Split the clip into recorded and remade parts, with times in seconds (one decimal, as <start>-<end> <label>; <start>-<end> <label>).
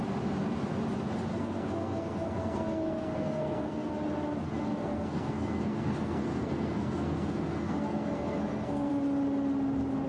0.0-1.3 recorded; 1.3-3.9 remade; 3.9-4.7 recorded; 4.7-8.9 remade; 8.9-10.1 recorded